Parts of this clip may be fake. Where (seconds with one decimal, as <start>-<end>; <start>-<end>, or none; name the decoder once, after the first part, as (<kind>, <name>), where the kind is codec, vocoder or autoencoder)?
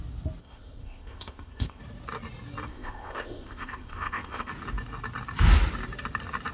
0.4-1.8 (codec, ZipCodec); 2.7-4.5